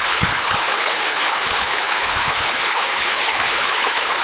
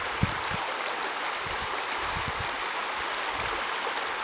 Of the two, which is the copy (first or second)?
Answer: first